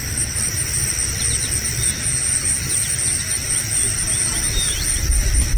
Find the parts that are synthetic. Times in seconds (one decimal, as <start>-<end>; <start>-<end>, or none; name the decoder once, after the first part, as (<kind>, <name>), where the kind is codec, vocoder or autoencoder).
none